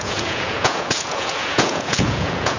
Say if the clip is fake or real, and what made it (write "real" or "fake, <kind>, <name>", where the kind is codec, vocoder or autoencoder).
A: fake, vocoder, Vocos